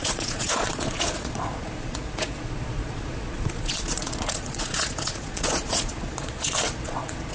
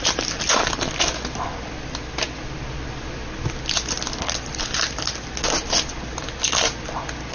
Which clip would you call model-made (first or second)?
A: first